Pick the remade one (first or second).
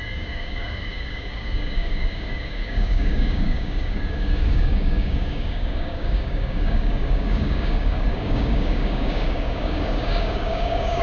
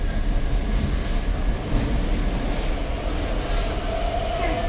first